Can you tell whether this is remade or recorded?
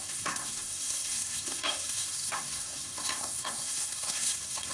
remade